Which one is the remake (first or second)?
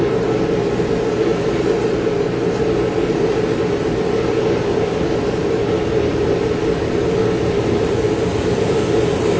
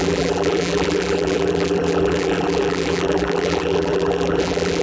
second